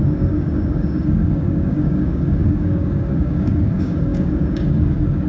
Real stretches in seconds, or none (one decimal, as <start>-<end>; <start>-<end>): none